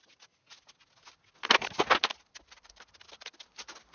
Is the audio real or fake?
real